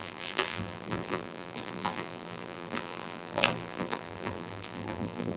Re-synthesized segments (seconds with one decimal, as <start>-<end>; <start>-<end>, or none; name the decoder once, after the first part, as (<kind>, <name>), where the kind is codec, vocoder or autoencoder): 0.0-5.4 (vocoder, BigVGAN v2)